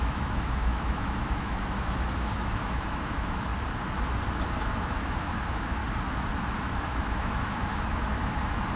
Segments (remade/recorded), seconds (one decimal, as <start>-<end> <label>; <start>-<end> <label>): 0.0-3.5 remade; 3.5-4.6 recorded; 4.6-5.8 remade; 5.8-6.6 recorded; 6.6-8.8 remade